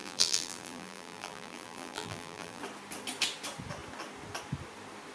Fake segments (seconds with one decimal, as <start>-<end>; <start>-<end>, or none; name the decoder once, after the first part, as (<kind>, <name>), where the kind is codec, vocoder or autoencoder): 0.0-2.6 (vocoder, BigVGAN v2)